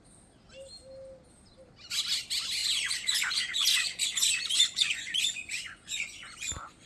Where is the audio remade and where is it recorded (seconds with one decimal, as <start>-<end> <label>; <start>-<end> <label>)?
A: 0.0-2.6 recorded; 2.6-6.9 remade